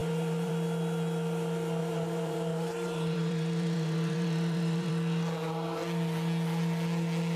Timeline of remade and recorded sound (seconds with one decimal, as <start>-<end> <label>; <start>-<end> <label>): 0.0-0.5 remade; 0.5-1.8 recorded; 1.8-4.9 remade; 4.9-7.4 recorded